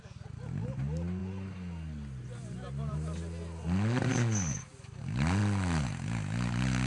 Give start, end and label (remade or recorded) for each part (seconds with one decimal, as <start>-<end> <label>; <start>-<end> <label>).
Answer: 0.0-6.9 recorded